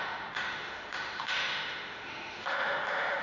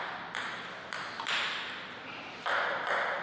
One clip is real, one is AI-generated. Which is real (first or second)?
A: second